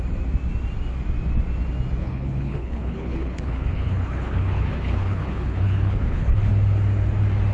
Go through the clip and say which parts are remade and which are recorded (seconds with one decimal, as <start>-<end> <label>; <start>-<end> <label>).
0.0-2.0 recorded; 2.0-6.5 remade; 6.5-7.5 recorded